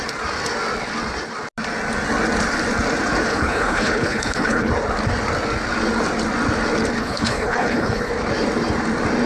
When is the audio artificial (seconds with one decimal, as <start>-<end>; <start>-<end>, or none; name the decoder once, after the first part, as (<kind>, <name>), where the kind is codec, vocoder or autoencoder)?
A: 3.3-4.7 (codec, HILCodec); 7.0-8.1